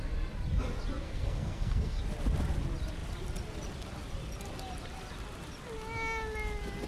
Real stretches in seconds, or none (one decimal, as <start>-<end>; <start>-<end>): 0.0-1.0; 2.0-6.9